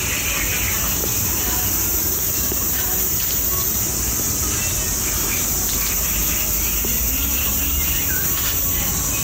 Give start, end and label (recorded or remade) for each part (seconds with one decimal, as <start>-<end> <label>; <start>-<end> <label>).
0.0-1.9 recorded; 1.9-3.0 remade; 3.0-9.2 recorded